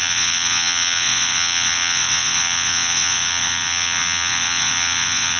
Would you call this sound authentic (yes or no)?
no